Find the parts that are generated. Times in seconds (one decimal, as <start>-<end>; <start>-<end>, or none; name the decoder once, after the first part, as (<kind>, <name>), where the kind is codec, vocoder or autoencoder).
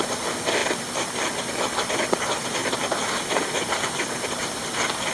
2.6-3.8 (vocoder, BigVGAN v2)